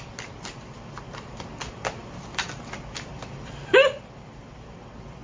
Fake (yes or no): yes